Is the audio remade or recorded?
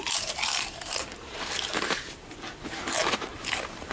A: remade